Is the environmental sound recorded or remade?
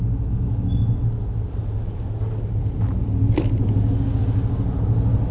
recorded